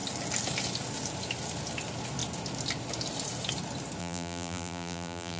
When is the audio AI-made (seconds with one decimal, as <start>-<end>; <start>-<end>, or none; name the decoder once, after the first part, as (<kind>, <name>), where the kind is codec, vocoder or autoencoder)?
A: 4.0-5.4 (vocoder, BigVGAN v2)